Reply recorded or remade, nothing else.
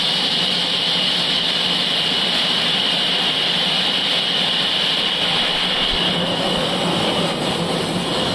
recorded